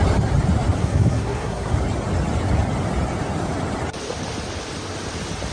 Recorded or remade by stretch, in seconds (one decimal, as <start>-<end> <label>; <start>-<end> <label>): 0.0-0.8 recorded; 0.8-1.7 remade; 1.7-5.5 recorded